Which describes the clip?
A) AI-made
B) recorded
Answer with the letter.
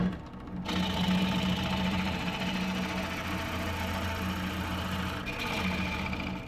B